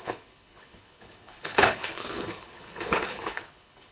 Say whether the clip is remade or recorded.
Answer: remade